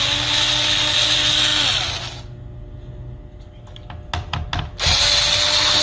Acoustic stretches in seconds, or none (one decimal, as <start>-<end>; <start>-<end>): 0.0-5.8